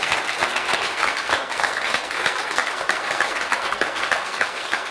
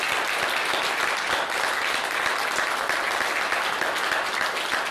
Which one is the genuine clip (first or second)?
second